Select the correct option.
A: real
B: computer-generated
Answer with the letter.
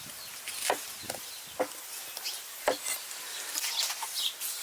A